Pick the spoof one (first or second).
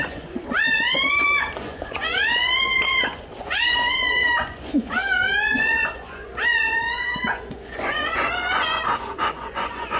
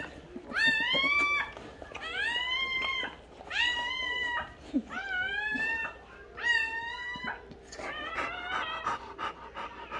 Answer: first